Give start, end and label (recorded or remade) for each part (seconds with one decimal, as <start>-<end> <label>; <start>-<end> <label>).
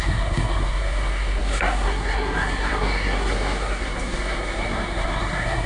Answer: 0.0-5.7 remade